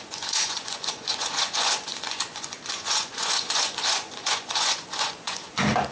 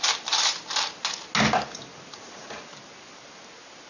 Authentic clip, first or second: second